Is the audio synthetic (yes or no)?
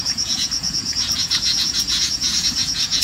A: yes